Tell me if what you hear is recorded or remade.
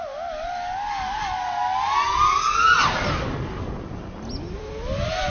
recorded